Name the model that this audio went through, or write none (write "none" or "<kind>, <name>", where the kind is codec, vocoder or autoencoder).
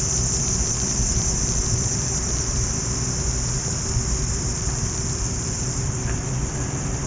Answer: vocoder, BigVGAN v2